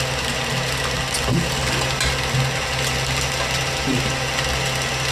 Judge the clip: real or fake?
real